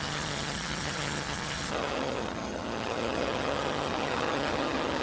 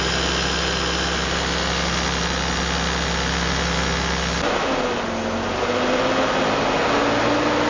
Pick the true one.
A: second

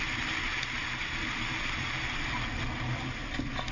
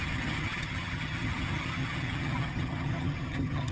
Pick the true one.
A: first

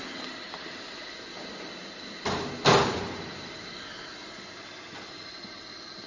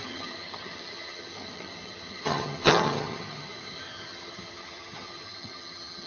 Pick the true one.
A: first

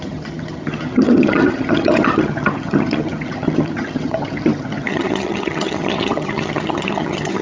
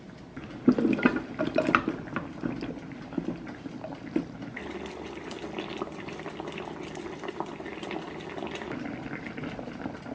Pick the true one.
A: second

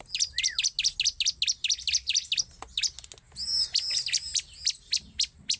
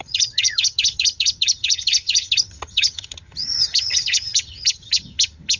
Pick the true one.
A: first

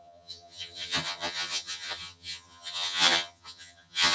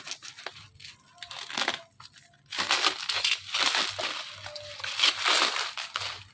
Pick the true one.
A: second